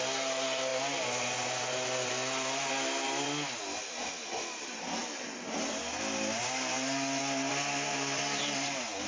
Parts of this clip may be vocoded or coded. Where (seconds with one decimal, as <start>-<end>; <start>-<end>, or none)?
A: none